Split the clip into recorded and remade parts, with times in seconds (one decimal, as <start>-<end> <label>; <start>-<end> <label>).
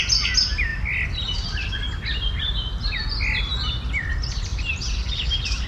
0.0-5.7 recorded